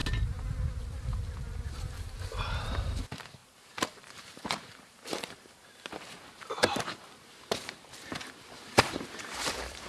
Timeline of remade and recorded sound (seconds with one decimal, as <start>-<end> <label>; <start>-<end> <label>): 0.0-1.7 recorded; 1.7-9.9 remade